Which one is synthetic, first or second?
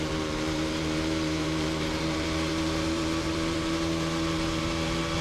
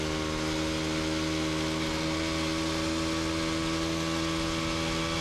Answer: first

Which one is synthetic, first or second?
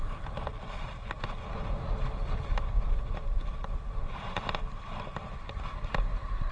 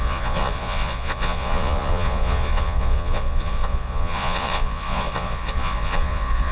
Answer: second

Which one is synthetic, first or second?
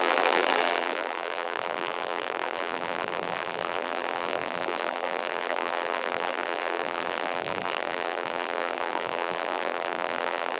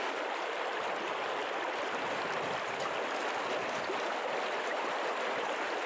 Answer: first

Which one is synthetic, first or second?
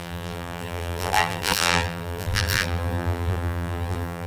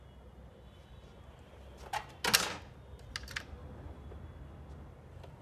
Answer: first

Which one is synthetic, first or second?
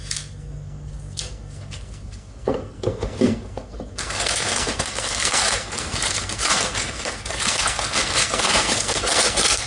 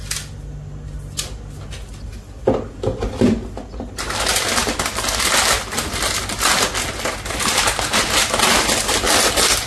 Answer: first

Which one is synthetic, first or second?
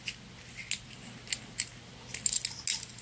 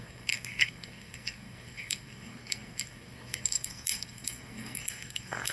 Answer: second